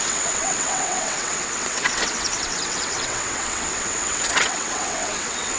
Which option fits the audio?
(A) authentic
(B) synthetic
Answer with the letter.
B